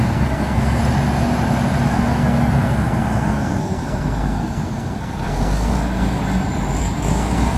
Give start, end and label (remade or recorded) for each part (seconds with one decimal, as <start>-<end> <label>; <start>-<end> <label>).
0.0-0.8 remade; 0.8-1.9 recorded; 1.9-6.2 remade; 6.2-6.8 recorded; 6.8-7.6 remade